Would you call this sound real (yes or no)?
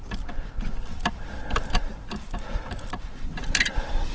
no